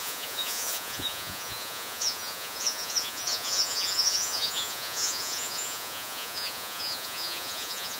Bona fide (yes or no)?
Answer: no